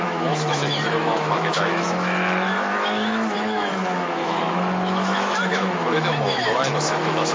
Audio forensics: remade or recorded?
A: remade